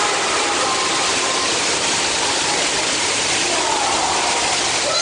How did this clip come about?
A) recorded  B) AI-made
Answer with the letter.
A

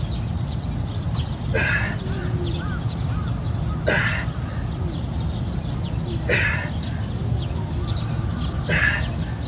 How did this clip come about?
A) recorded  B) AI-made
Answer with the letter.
A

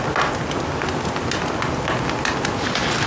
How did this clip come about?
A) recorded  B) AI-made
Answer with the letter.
A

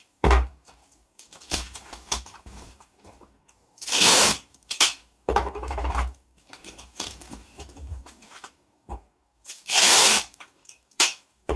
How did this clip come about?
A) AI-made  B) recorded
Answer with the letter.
A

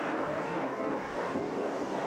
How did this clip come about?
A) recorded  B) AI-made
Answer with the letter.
B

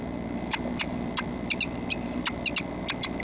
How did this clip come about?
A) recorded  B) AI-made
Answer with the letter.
A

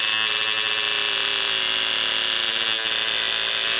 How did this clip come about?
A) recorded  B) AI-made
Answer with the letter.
A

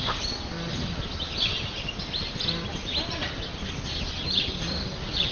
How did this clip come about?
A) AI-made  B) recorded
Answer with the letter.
B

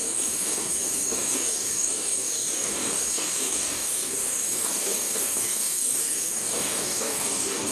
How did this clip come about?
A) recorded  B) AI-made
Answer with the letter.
B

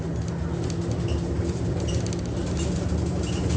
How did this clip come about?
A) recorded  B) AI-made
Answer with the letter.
A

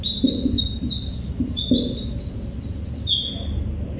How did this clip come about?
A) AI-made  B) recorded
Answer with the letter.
B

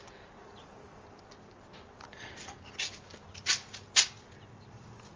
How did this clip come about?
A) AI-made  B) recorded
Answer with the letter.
B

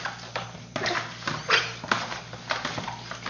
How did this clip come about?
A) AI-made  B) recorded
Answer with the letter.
B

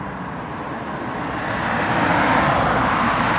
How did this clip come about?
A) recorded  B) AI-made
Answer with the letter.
A